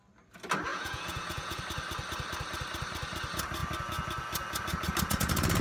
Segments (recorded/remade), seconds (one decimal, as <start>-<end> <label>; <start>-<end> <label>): 0.0-0.7 recorded; 0.7-1.6 remade; 1.6-5.6 recorded